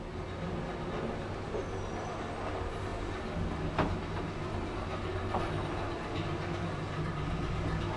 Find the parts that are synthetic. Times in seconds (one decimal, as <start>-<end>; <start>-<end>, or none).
none